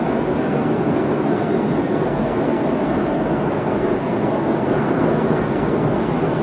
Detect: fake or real fake